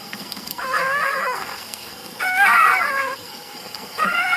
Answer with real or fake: fake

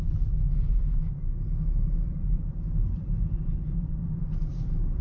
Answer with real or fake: fake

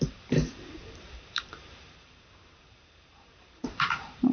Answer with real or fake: fake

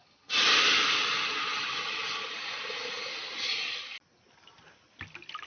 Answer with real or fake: real